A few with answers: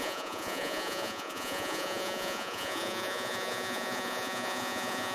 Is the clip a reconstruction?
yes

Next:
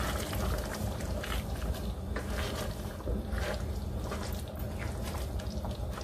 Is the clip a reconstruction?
no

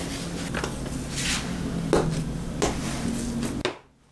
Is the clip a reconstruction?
no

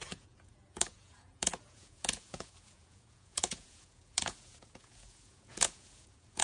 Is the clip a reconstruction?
yes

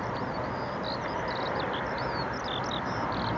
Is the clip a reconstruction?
no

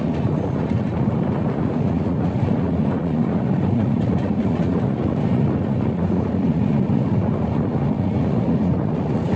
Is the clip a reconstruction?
yes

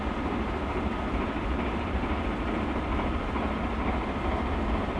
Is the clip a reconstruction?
no